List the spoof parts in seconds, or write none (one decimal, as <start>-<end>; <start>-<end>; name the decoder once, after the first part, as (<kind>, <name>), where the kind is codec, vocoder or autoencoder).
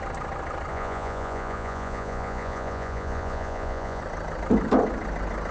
0.7-4.0 (vocoder, Vocos)